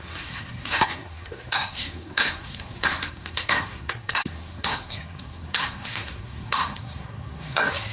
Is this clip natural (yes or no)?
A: no